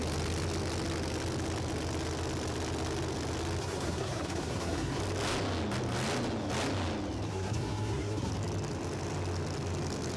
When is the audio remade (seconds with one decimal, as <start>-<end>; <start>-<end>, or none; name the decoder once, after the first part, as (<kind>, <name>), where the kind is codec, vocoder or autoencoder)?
3.6-5.0 (codec, SNAC); 7.3-8.3